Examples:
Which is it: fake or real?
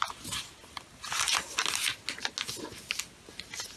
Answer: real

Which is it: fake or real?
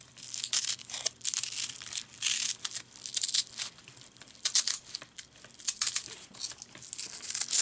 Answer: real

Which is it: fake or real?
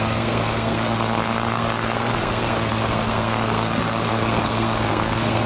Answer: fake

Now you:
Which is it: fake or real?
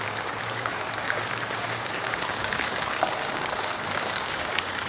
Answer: fake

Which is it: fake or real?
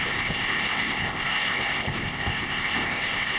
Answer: fake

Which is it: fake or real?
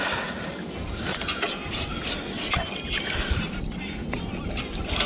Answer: real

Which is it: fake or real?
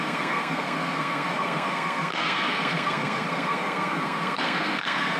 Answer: fake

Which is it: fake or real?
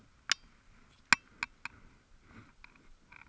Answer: real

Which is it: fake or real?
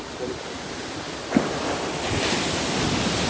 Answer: real